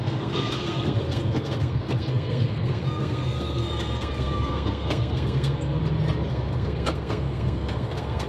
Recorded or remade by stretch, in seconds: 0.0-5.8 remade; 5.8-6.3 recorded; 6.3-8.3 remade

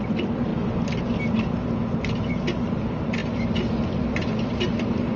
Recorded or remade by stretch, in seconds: 0.0-5.2 recorded

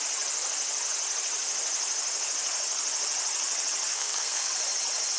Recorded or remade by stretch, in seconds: 0.0-3.9 recorded; 3.9-4.5 remade; 4.5-5.2 recorded

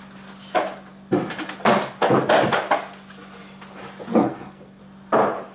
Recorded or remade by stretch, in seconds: 0.0-4.1 recorded; 4.1-4.8 remade; 4.8-5.5 recorded

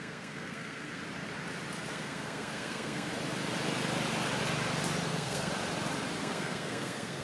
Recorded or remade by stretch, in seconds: 0.0-1.0 remade; 1.0-1.9 recorded; 1.9-3.1 remade; 3.1-5.1 recorded; 5.1-5.5 remade; 5.5-6.2 recorded; 6.2-7.2 remade